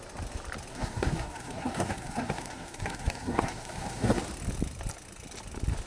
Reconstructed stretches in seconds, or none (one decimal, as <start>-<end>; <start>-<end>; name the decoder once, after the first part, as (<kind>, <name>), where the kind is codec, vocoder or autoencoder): 0.7-4.2 (codec, SNAC)